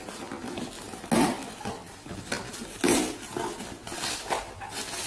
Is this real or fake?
real